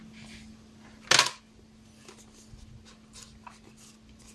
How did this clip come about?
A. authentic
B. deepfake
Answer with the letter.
A